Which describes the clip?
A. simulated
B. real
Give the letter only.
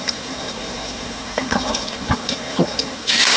A